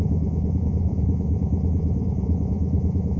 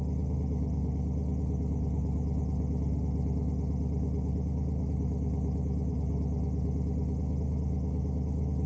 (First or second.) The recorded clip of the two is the second